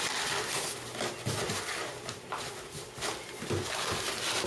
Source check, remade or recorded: recorded